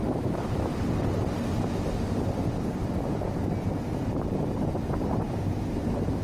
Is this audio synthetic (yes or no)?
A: no